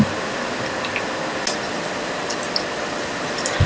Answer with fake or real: real